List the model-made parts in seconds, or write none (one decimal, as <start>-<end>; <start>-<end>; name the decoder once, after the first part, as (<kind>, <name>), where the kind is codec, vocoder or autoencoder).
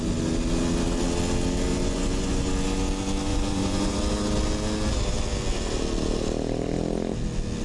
1.7-2.5 (vocoder, Vocos); 3.3-4.0